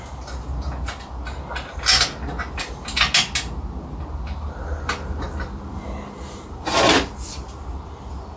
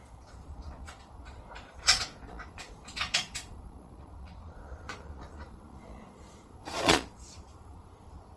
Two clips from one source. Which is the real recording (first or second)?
first